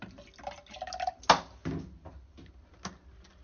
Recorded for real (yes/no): yes